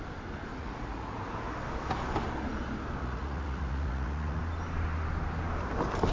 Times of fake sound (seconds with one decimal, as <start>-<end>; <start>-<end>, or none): 0.5-1.2; 3.0-4.4